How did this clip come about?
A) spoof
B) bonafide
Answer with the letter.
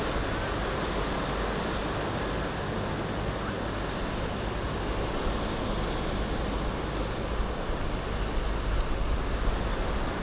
B